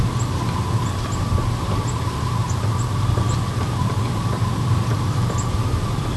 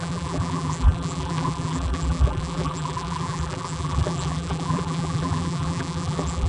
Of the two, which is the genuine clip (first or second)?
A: first